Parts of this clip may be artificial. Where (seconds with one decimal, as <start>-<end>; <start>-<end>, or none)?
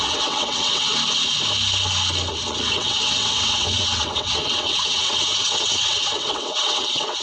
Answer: 0.0-0.9; 2.3-7.2